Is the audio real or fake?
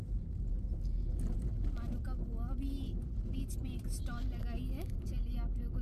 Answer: real